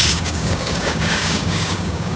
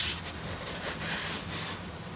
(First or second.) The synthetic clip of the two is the first